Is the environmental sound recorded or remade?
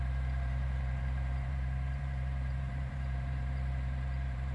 remade